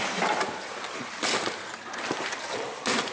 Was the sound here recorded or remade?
recorded